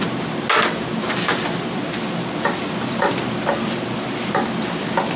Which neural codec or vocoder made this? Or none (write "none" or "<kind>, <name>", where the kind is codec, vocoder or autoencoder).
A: none